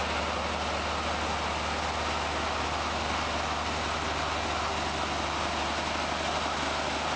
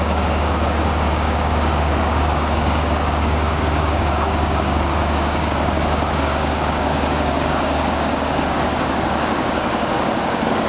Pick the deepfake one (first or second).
second